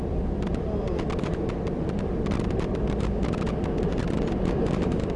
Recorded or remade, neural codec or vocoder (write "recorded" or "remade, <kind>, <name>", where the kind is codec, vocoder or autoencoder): recorded